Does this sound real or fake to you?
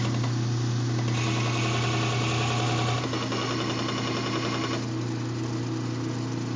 real